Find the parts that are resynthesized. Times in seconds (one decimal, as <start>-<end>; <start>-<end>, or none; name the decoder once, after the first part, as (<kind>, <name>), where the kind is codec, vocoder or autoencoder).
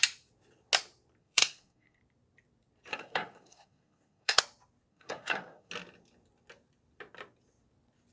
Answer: 1.2-2.0 (codec, SNAC); 2.9-4.4; 4.9-5.7